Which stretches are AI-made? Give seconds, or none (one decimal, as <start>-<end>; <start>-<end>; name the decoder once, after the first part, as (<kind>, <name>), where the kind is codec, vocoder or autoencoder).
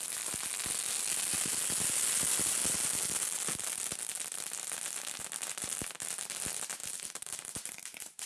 6.8-8.3 (vocoder, BigVGAN v2)